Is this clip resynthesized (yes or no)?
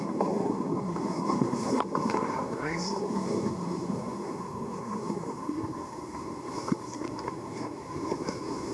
yes